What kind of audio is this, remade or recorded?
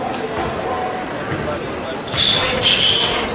recorded